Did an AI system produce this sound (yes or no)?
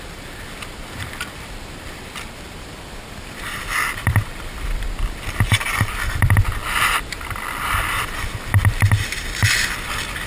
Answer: yes